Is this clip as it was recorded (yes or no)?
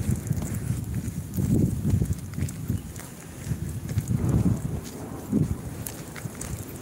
yes